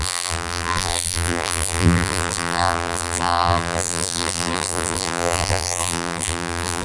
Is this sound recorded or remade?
remade